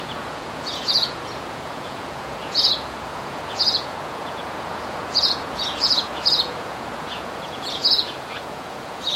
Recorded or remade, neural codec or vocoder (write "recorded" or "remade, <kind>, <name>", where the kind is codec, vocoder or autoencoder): remade, vocoder, Vocos